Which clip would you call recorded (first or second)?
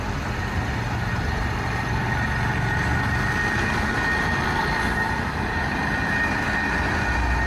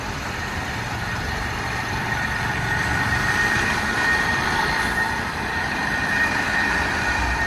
first